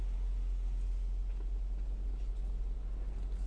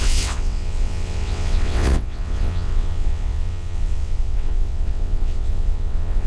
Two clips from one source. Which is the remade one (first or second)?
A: second